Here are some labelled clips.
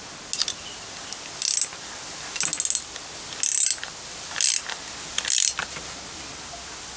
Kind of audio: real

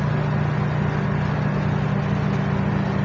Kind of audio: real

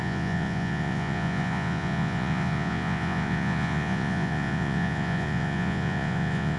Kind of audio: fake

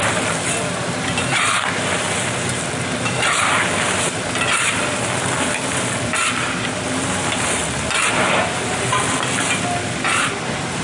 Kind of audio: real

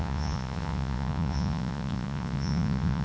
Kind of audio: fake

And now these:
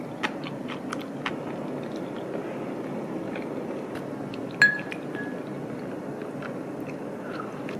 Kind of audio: real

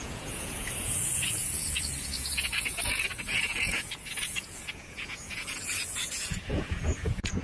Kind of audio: fake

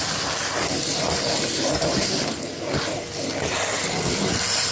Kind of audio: real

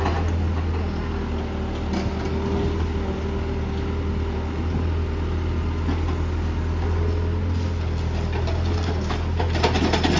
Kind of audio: real